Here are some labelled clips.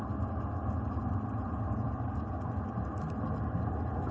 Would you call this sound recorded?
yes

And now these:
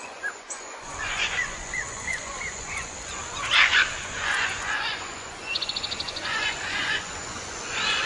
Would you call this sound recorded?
no